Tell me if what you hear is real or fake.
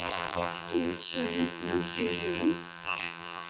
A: fake